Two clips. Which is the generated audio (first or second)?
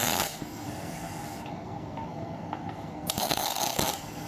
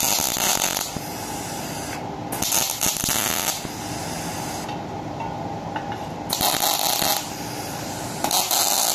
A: first